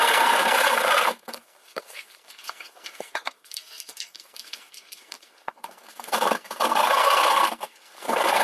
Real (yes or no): no